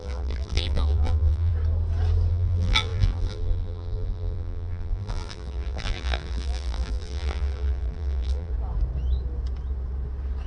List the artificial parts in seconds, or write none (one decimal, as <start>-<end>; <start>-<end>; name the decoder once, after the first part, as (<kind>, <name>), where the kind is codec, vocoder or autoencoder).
0.0-1.5 (vocoder, BigVGAN v2); 2.3-8.5